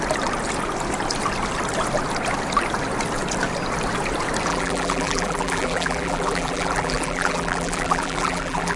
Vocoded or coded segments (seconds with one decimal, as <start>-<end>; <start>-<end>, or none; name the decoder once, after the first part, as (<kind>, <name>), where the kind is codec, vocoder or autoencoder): 4.5-8.8 (vocoder, BigVGAN v2)